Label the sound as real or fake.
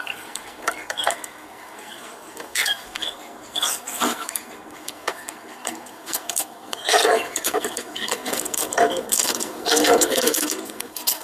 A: fake